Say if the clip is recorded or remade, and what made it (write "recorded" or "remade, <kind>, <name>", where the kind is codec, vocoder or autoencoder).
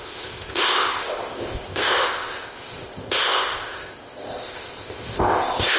remade, codec, ZipCodec